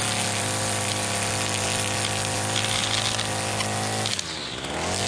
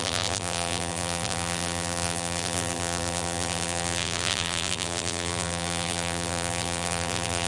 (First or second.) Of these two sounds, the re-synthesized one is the second